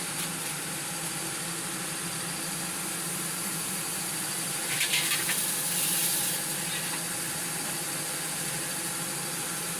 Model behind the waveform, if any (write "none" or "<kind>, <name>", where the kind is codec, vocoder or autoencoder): vocoder, BigVGAN v2